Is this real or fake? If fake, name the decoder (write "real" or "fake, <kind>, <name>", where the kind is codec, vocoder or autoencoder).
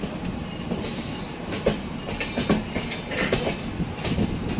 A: real